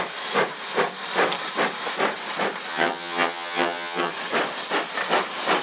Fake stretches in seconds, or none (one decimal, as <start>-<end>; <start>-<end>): 2.7-4.1